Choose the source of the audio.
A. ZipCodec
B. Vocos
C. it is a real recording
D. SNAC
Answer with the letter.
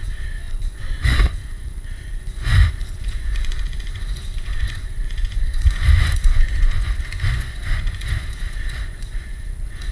B